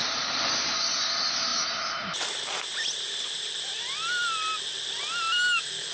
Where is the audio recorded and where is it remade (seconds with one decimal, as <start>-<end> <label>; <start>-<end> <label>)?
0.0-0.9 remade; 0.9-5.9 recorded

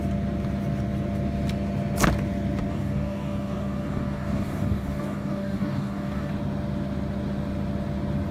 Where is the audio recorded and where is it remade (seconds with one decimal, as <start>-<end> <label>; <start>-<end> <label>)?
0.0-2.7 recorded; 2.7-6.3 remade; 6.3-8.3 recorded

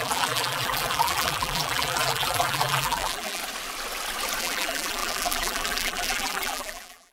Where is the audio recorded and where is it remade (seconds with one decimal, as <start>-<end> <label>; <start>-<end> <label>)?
0.0-3.4 remade; 3.4-4.4 recorded; 4.4-7.1 remade

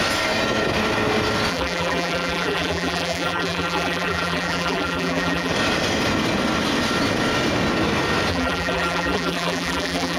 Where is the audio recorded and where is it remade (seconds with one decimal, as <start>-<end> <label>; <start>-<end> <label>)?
0.0-1.5 recorded; 1.5-5.5 remade; 5.5-8.3 recorded; 8.3-10.2 remade